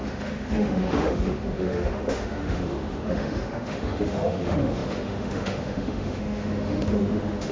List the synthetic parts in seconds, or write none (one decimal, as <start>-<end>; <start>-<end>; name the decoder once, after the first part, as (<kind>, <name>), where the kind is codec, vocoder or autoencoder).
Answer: 0.0-7.5 (autoencoder, DAC-VAE)